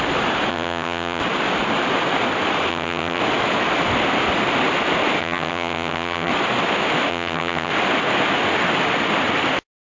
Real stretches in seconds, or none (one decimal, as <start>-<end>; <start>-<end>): 0.0-0.5; 1.2-2.7; 3.2-5.2; 6.3-7.1; 7.7-9.8